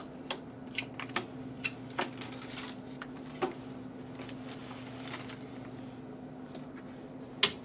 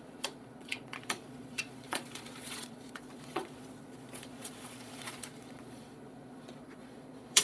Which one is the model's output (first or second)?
second